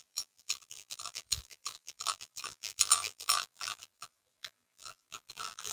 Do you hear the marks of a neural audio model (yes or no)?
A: yes